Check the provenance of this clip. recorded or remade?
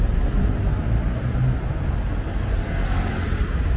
recorded